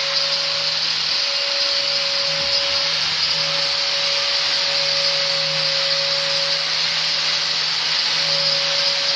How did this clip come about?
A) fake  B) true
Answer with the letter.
B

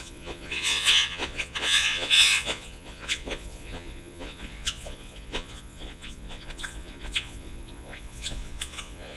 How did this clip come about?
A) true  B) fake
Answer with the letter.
B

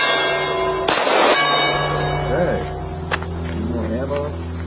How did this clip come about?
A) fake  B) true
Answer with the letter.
B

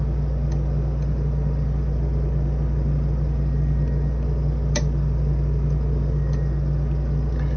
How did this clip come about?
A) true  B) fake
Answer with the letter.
A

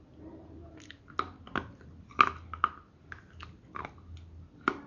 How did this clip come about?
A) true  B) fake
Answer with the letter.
A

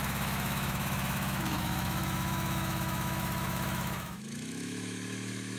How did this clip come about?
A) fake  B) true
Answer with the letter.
A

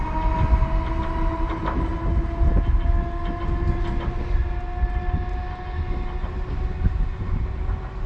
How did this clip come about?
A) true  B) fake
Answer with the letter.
A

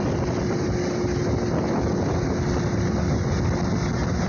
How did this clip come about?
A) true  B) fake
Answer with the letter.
A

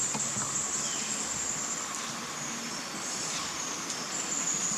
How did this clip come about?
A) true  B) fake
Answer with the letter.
A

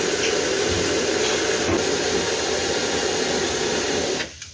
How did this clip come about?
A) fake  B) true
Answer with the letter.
B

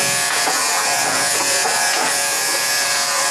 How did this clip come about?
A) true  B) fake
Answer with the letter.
B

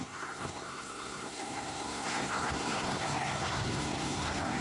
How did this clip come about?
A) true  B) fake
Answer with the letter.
B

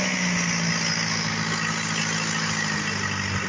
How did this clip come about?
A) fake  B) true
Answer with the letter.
B